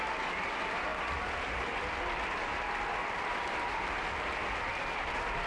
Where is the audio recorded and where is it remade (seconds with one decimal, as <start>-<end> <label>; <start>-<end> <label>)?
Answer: 0.0-5.5 recorded